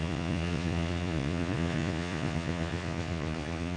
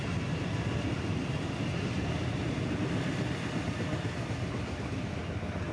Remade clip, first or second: first